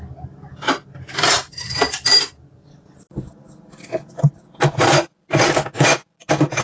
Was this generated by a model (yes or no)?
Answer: no